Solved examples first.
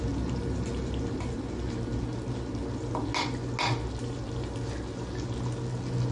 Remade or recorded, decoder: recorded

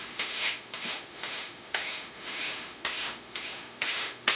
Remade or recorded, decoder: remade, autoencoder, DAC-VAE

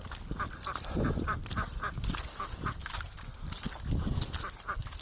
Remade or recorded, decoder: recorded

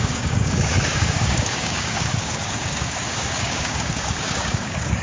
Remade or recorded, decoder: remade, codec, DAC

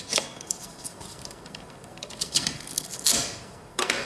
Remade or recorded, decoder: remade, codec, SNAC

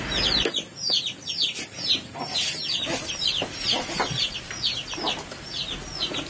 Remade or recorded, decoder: recorded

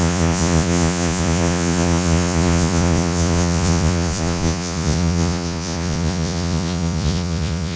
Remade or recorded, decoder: remade, vocoder, Vocos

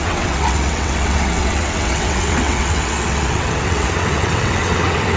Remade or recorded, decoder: remade, vocoder, WaveNeXt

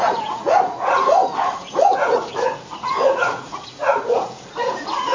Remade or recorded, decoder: remade, vocoder, Vocos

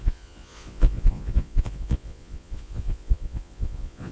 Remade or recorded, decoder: remade, vocoder, Vocos